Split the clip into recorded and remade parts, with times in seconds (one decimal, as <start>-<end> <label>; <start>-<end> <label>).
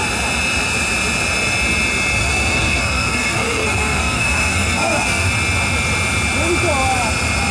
0.0-2.2 recorded; 2.2-5.3 remade; 5.3-7.5 recorded